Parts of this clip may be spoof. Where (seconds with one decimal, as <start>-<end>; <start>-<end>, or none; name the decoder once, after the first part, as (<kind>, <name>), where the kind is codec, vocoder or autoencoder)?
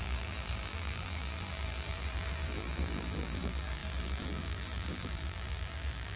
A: 0.0-6.2 (vocoder, BigVGAN v2)